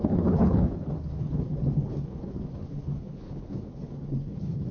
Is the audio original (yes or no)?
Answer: no